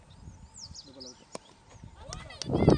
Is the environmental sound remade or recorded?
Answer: recorded